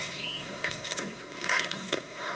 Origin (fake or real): fake